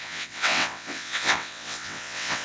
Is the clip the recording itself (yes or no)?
no